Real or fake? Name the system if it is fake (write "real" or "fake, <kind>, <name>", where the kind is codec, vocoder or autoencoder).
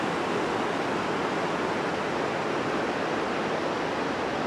real